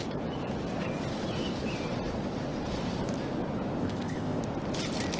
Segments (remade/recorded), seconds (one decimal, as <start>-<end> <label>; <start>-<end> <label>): 0.0-3.8 recorded; 3.8-4.4 remade; 4.4-5.2 recorded